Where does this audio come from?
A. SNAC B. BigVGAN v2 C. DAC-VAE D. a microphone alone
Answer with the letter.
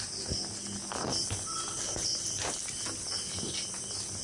D